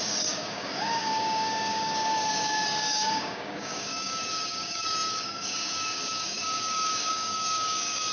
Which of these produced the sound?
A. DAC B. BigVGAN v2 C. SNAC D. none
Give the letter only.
A